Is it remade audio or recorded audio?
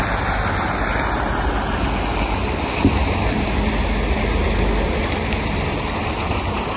recorded